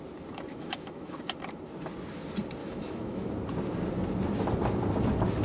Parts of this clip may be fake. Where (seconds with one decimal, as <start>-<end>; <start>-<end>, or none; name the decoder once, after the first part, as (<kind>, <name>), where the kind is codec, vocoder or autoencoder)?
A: 0.5-1.2 (autoencoder, DAC-VAE); 2.6-3.3